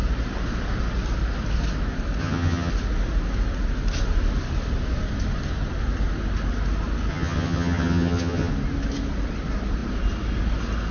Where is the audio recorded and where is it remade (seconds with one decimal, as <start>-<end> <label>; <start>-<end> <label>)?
0.0-2.2 recorded; 2.2-2.7 remade; 2.7-7.1 recorded; 7.1-8.5 remade; 8.5-10.9 recorded